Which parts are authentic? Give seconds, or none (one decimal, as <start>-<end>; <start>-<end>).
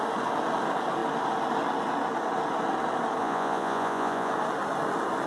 0.0-3.2; 4.3-5.3